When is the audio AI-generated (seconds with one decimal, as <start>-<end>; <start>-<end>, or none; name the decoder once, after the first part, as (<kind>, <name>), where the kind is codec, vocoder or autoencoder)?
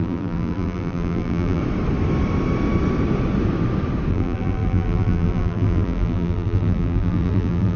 0.0-1.6 (vocoder, BigVGAN v2); 4.1-7.8